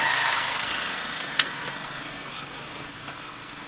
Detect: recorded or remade remade